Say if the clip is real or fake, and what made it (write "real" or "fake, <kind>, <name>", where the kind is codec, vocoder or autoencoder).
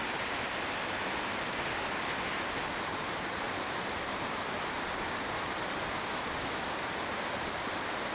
real